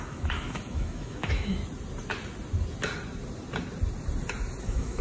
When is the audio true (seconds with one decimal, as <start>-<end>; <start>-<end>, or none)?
1.6-4.6